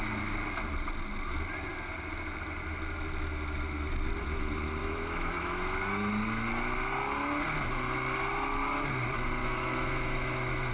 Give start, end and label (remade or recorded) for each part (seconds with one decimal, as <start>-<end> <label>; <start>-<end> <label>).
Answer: 0.0-4.8 recorded; 4.8-5.8 remade; 5.8-9.4 recorded; 9.4-10.7 remade